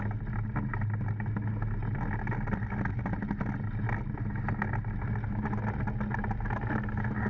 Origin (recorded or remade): recorded